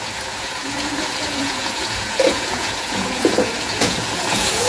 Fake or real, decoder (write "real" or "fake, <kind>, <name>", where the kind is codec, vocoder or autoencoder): fake, vocoder, Vocos